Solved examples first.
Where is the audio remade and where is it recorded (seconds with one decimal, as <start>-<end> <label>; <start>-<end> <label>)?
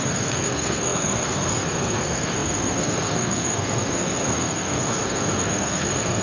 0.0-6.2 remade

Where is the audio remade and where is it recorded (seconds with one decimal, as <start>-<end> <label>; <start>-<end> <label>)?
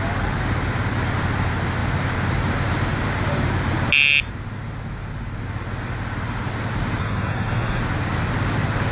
0.0-7.0 recorded; 7.0-7.8 remade; 7.8-8.9 recorded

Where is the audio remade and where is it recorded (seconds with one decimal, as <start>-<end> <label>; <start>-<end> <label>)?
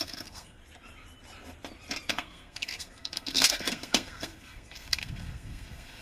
0.0-0.6 remade; 0.6-2.1 recorded; 2.1-6.0 remade